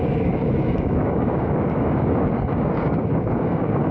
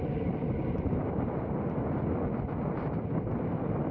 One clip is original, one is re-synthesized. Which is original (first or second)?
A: second